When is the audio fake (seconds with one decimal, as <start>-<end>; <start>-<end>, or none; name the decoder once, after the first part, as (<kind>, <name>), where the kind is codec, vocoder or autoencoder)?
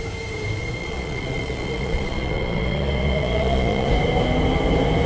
0.8-3.9 (vocoder, Vocos)